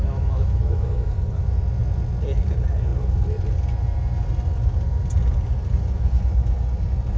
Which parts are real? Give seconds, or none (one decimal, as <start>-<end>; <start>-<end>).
1.1-7.2